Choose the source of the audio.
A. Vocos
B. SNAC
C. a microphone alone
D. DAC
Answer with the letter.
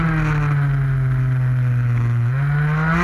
C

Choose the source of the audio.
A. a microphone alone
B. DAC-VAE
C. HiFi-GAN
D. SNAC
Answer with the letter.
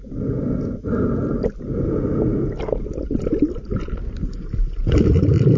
A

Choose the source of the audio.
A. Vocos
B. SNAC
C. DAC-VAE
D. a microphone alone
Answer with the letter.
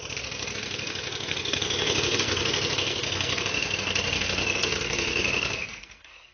B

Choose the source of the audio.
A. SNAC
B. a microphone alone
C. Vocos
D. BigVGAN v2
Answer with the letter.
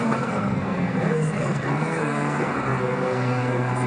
A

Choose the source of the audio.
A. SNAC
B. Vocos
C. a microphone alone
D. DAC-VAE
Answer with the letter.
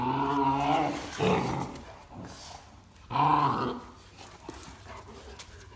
C